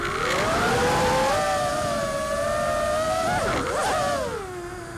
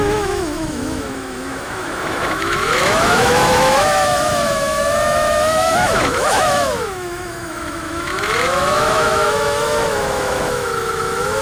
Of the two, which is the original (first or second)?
first